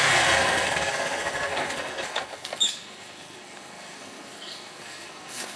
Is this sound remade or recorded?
remade